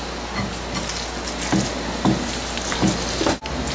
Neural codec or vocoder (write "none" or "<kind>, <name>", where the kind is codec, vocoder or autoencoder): none